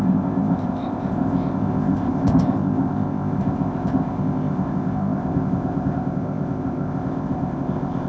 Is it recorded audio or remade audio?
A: remade